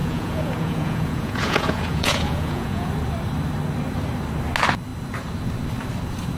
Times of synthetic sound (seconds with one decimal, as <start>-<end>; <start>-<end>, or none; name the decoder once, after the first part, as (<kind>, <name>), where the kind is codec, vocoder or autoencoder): 0.0-2.9 (vocoder, Vocos)